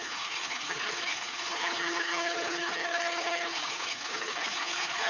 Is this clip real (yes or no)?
no